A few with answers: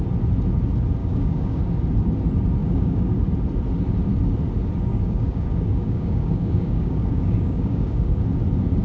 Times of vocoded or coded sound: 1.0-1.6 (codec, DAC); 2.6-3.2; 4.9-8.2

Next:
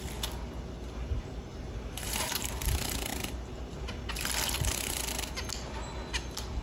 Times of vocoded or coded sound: 1.5-2.5 (vocoder, BigVGAN v2); 3.1-4.1

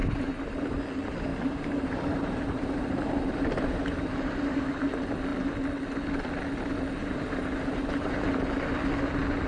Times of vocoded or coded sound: 0.0-0.8 (vocoder, BigVGAN v2); 1.3-4.6; 7.0-8.4

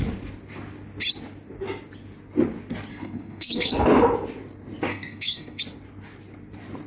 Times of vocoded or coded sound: 2.9-3.7 (codec, SNAC); 4.9-5.6

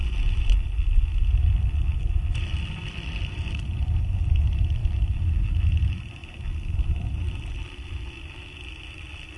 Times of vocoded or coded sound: none